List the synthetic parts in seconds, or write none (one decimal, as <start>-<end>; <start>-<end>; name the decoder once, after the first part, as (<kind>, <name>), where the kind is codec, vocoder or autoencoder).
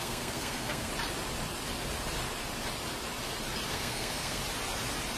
0.0-0.9 (codec, SNAC); 3.7-4.4